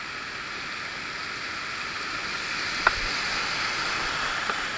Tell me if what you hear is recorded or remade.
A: recorded